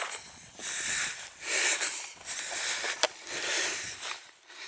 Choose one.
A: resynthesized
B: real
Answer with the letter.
A